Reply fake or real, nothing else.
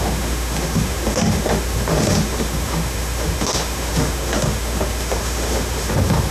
fake